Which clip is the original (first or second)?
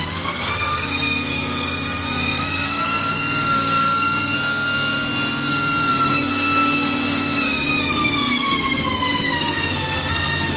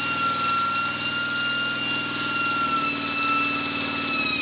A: second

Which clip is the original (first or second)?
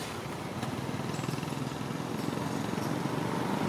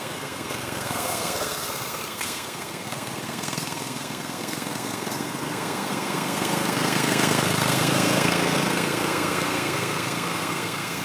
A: first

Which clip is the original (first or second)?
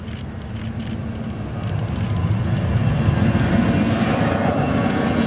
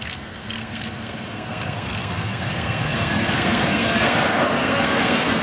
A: first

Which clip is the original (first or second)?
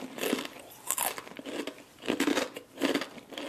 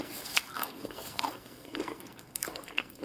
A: first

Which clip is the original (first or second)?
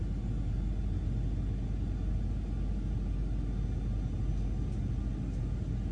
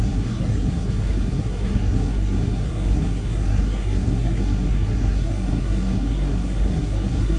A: first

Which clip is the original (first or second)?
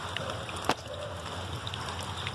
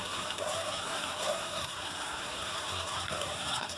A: first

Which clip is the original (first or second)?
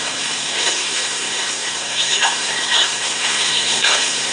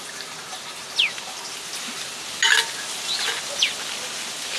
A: second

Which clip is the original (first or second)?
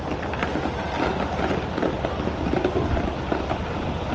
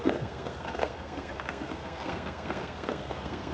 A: first